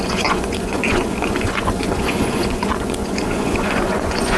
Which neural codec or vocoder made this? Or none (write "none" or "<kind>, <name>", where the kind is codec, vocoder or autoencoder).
vocoder, Vocos